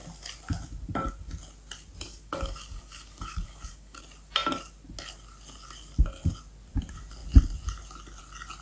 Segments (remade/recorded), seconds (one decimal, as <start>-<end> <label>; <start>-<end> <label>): 0.0-2.1 recorded; 2.1-4.0 remade; 4.0-8.6 recorded